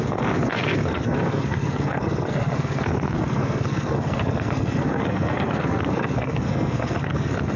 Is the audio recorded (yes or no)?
no